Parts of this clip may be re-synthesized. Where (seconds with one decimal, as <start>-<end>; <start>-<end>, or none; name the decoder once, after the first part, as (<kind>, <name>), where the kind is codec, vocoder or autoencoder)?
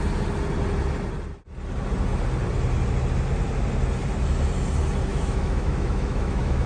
5.1-6.7 (autoencoder, DAC-VAE)